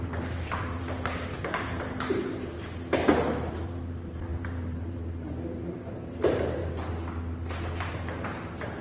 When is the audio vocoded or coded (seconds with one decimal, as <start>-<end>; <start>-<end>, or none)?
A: 0.0-6.6; 7.6-8.8